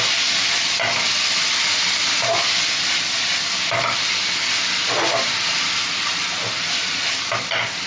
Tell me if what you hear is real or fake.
real